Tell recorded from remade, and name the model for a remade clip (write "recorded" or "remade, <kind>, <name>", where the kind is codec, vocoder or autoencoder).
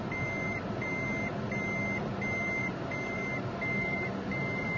recorded